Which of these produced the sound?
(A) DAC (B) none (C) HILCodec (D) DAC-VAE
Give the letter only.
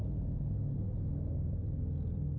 B